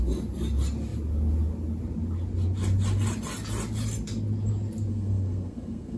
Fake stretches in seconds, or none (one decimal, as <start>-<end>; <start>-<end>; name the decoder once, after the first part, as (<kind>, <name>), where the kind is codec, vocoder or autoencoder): 4.9-6.0 (codec, SNAC)